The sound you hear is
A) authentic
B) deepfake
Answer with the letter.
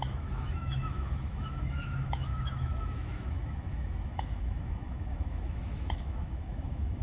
B